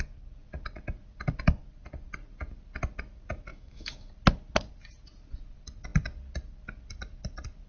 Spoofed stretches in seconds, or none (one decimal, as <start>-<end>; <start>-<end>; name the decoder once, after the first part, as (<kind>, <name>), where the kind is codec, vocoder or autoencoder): 3.5-4.1 (autoencoder, DAC-VAE)